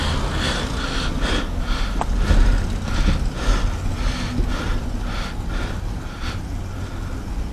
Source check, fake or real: real